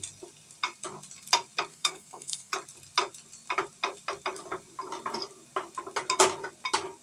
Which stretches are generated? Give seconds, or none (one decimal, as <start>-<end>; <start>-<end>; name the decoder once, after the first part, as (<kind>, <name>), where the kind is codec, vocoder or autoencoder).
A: 1.7-2.5 (codec, SNAC)